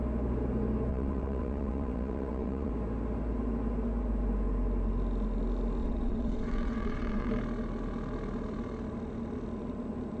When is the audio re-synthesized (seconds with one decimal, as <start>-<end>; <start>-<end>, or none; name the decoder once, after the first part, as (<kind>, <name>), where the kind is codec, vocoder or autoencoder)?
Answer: 0.9-2.7 (vocoder, WaveNeXt); 5.8-7.3